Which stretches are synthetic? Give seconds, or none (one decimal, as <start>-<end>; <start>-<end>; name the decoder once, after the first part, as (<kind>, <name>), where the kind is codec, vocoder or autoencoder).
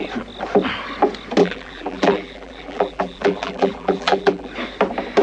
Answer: 1.4-4.5 (vocoder, BigVGAN v2)